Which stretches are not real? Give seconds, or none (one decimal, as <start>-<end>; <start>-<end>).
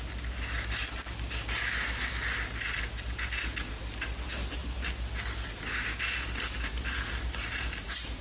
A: none